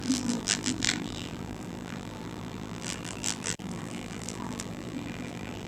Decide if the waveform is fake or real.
fake